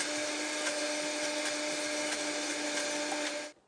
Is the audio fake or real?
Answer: real